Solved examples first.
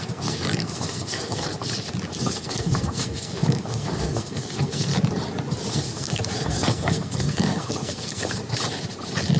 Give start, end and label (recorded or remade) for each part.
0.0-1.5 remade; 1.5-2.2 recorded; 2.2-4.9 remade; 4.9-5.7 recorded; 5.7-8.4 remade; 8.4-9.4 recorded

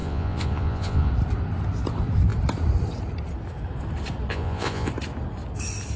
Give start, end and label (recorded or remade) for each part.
0.0-1.1 remade; 1.1-4.3 recorded; 4.3-4.9 remade; 4.9-6.0 recorded

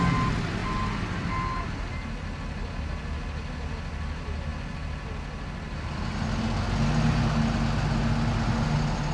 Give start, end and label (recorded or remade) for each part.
0.0-9.1 recorded

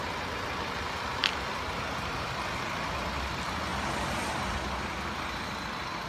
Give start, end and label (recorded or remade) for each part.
0.0-6.1 recorded